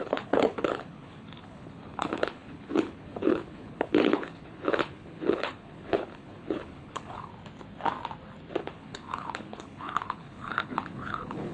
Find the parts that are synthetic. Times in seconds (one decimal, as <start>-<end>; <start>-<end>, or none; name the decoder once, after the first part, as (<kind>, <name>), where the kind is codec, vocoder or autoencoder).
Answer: 0.0-7.3 (codec, HILCodec); 8.6-11.5